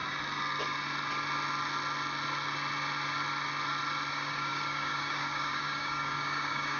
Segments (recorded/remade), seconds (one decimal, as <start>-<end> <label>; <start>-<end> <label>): 0.0-4.1 recorded; 4.1-6.8 remade